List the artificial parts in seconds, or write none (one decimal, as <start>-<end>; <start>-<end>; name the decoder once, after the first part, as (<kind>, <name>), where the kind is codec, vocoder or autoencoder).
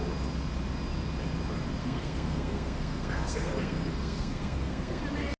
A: 1.8-5.0 (codec, SNAC)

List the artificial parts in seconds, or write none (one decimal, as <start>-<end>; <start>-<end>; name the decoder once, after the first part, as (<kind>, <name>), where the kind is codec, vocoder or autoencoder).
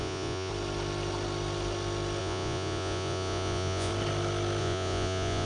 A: 0.0-0.5 (vocoder, Vocos); 2.2-3.9; 4.6-5.4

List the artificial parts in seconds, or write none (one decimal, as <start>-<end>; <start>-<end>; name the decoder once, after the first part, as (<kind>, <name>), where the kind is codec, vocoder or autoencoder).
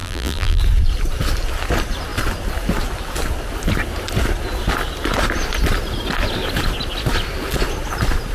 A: 0.0-0.6 (vocoder, BigVGAN v2)